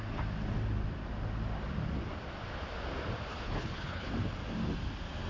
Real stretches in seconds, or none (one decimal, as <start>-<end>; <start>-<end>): 0.0-3.3; 4.1-5.3